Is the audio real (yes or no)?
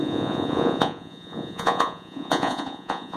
no